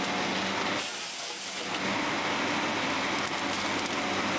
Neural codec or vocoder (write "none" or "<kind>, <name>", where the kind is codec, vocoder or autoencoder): none